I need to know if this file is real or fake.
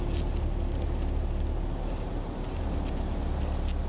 real